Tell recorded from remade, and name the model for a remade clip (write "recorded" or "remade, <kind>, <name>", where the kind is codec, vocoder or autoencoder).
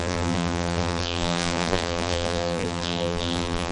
remade, vocoder, BigVGAN v2